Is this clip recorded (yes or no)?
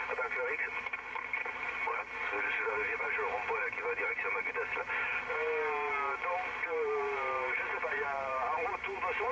yes